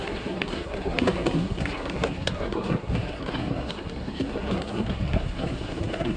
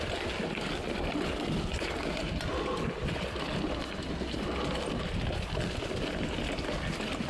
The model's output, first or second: first